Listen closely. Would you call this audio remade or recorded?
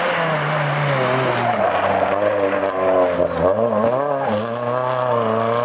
recorded